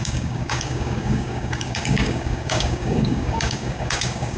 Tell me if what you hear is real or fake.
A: fake